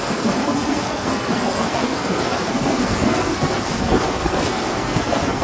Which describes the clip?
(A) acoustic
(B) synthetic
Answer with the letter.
B